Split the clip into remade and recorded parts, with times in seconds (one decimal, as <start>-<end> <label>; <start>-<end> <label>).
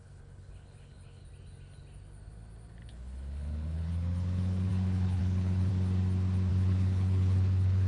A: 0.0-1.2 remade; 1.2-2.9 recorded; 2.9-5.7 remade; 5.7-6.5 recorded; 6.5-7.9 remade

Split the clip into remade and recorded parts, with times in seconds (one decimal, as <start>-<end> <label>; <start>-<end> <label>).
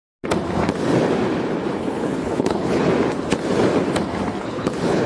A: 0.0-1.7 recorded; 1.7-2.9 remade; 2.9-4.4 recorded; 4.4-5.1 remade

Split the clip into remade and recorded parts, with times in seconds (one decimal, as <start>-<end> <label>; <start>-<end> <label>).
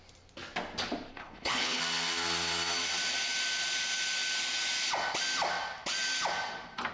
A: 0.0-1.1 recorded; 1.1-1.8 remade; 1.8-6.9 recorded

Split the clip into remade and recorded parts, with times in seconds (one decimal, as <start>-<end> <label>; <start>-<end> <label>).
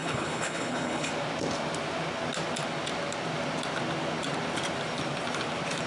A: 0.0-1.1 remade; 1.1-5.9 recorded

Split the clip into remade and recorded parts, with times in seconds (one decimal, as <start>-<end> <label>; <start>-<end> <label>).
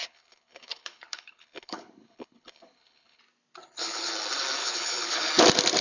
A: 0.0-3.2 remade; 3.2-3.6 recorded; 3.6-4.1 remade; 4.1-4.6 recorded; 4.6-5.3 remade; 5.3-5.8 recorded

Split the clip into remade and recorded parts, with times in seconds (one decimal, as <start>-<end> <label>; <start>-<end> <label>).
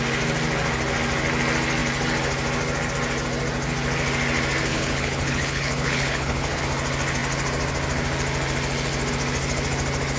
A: 0.0-4.7 recorded; 4.7-6.6 remade; 6.6-10.2 recorded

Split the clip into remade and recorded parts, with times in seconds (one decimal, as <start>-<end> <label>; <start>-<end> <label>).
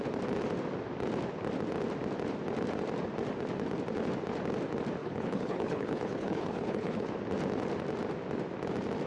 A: 0.0-5.0 recorded; 5.0-7.1 remade; 7.1-9.1 recorded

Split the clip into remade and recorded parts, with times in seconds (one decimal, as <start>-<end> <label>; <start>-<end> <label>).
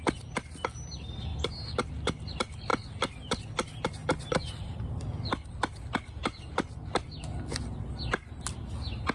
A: 0.0-9.1 recorded